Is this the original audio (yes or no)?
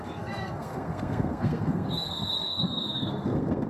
no